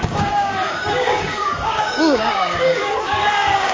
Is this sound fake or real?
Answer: fake